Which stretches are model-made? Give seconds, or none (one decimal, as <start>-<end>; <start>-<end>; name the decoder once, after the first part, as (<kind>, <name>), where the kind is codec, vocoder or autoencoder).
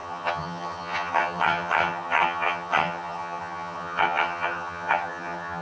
0.0-5.6 (vocoder, HiFi-GAN)